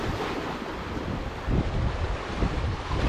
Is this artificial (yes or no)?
no